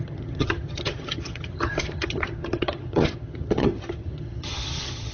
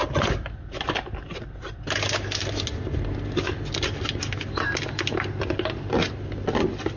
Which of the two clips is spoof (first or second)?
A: first